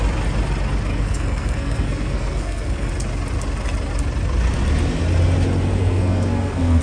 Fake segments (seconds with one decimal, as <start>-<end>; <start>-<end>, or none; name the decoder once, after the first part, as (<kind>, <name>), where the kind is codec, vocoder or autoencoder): 0.9-2.9 (codec, SNAC); 5.8-6.8